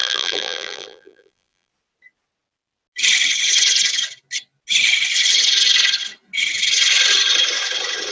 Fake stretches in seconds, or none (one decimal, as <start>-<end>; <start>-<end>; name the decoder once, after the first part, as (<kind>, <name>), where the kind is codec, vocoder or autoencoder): 0.0-1.7 (vocoder, BigVGAN v2)

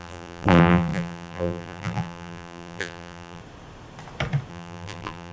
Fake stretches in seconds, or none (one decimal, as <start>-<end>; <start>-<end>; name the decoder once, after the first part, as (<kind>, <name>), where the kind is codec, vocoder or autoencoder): 0.0-3.4 (vocoder, BigVGAN v2); 4.5-5.3

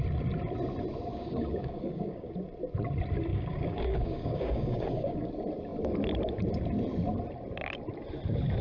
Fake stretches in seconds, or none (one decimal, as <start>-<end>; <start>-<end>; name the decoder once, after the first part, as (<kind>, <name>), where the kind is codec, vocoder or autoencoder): 1.1-2.3 (codec, DAC); 3.3-5.3

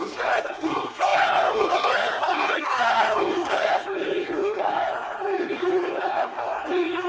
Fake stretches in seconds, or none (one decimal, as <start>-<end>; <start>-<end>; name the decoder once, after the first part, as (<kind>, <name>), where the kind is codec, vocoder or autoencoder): 0.0-7.1 (codec, SNAC)

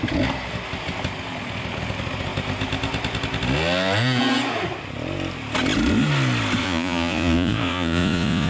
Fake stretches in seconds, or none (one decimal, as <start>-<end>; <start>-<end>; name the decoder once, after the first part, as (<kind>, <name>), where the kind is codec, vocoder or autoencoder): 6.6-8.5 (vocoder, Vocos)

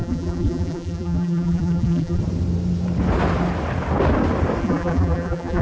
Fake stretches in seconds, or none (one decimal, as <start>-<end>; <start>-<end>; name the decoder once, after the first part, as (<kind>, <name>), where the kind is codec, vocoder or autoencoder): 0.0-2.2 (vocoder, BigVGAN v2); 4.6-5.6

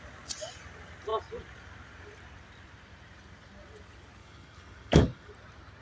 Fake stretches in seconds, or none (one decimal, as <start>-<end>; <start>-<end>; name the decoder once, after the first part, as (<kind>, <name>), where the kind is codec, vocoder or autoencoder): 4.2-5.3 (codec, DAC)

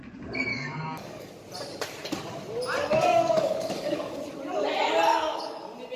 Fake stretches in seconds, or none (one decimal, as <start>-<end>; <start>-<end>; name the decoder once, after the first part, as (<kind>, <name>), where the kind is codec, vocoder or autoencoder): 0.5-1.3 (codec, DAC); 2.8-4.2; 5.1-5.6